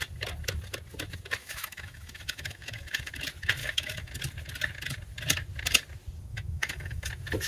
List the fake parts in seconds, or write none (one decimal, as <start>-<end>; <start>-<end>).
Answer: 1.4-3.1; 3.6-4.1; 6.3-7.1